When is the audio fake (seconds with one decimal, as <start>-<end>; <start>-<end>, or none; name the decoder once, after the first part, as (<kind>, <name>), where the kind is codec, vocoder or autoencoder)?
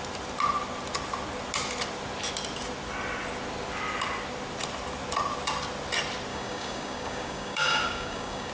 6.3-8.5 (codec, DAC)